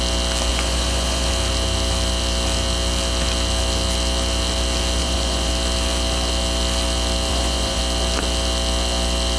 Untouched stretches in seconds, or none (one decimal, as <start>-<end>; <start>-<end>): 0.0-0.5; 1.3-5.0; 5.5-7.3; 7.8-9.4